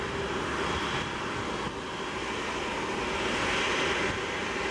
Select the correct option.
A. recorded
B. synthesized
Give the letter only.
A